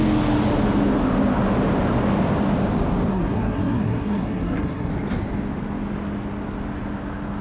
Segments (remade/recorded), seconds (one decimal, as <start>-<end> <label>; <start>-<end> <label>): 0.0-3.1 recorded; 3.1-4.9 remade; 4.9-7.4 recorded